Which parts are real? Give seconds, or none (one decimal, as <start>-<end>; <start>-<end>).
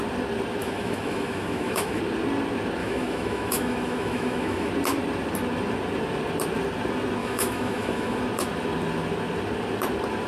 0.0-0.6; 2.0-2.8; 4.7-7.2; 8.2-10.3